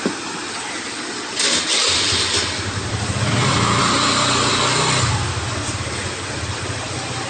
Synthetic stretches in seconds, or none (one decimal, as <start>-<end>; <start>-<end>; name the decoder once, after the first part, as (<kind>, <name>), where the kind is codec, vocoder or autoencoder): 0.0-4.5 (vocoder, BigVGAN v2); 6.2-7.3